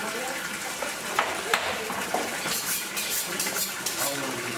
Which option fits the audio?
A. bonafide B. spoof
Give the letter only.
B